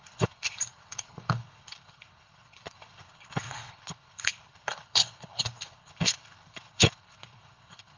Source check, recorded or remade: remade